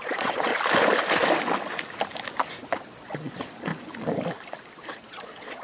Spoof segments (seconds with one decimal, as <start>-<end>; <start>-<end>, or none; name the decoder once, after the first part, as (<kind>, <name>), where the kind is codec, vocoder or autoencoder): 0.0-0.5 (vocoder, Vocos); 2.7-3.7; 4.9-5.6